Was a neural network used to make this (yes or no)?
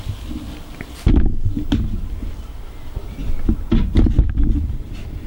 no